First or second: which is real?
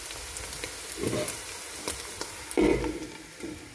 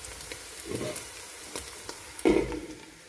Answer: first